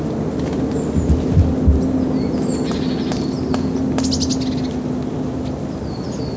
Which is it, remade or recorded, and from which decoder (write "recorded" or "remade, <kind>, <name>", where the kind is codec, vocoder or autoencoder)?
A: recorded